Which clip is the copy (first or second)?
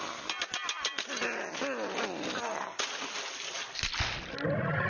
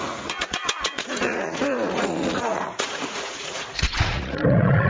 second